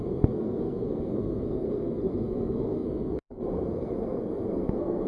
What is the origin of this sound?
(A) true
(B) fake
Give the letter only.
B